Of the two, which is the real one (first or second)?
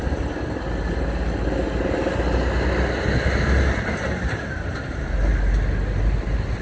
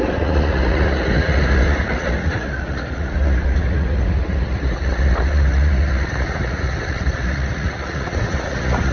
first